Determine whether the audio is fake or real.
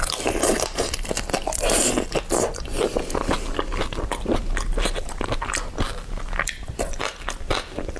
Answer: real